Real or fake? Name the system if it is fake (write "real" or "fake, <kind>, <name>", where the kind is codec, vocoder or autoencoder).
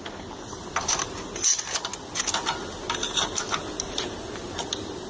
real